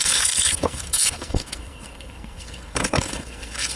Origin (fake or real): fake